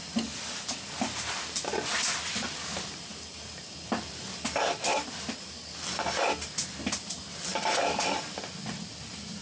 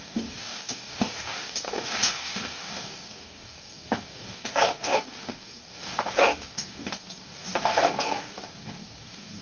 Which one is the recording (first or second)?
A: first